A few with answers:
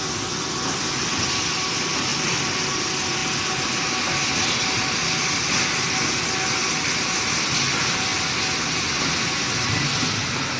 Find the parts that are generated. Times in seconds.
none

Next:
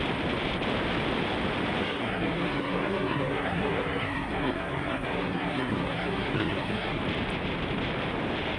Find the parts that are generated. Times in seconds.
1.8-7.0 (codec, SNAC)

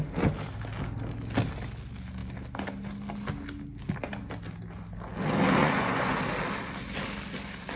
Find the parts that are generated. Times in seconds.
5.6-6.2 (vocoder, Vocos)

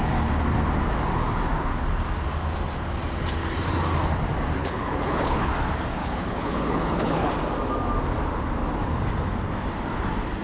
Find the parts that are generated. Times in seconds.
4.6-5.5 (codec, HILCodec); 6.0-7.3

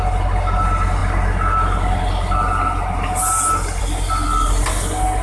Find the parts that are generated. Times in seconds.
none

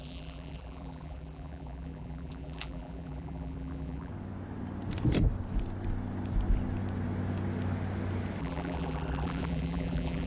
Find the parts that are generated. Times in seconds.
0.0-4.1 (vocoder, BigVGAN v2); 8.4-10.3

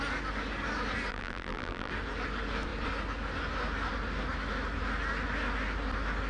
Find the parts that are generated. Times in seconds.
1.1-1.9 (vocoder, BigVGAN v2)

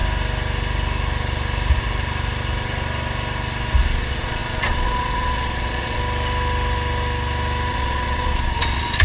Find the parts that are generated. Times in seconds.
3.8-6.0 (vocoder, Vocos); 7.7-9.0